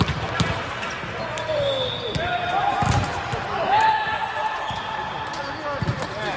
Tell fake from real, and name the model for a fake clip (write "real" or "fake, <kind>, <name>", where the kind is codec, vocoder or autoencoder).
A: real